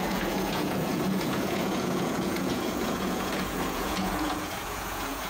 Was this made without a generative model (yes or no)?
no